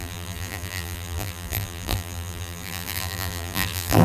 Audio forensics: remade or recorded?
remade